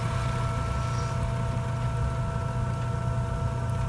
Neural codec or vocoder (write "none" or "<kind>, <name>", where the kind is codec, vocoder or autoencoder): none